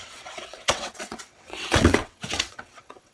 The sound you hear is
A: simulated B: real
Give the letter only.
A